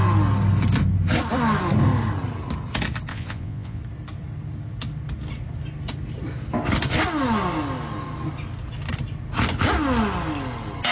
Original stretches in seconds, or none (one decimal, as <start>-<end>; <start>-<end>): 0.0-3.1; 3.8-10.9